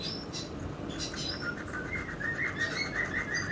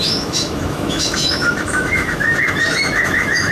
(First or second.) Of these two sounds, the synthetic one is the second